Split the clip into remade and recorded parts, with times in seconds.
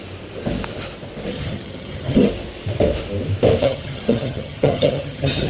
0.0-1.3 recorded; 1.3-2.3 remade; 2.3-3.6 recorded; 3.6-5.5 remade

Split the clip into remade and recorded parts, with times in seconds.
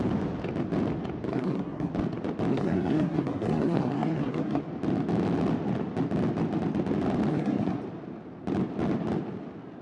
0.0-1.3 recorded; 1.3-1.9 remade; 1.9-2.5 recorded; 2.5-4.6 remade; 4.6-7.3 recorded; 7.3-7.8 remade; 7.8-9.8 recorded